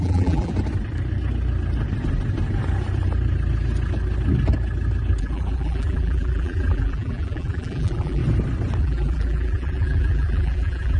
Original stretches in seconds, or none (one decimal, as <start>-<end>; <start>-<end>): 0.5-5.2; 8.2-8.8